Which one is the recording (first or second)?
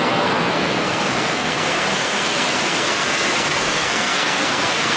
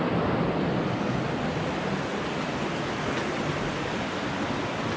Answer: second